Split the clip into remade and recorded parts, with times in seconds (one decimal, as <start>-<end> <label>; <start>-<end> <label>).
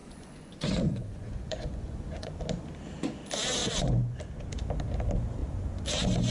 0.0-2.4 remade; 2.4-3.6 recorded; 3.6-4.2 remade; 4.2-6.3 recorded